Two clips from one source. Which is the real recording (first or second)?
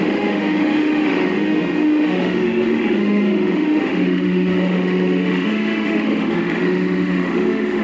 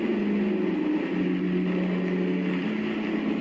second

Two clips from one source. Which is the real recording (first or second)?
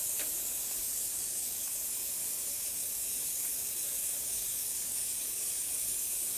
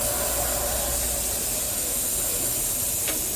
second